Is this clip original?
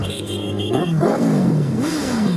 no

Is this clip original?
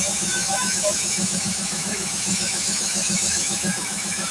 no